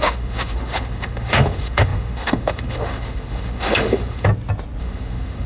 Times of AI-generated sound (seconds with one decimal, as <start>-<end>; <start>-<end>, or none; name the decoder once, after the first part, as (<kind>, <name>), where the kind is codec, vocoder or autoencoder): 0.0-4.3 (autoencoder, DAC-VAE); 4.8-5.5